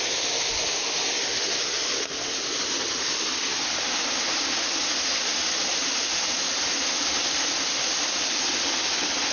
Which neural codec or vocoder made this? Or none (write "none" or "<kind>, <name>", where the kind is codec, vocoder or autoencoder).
none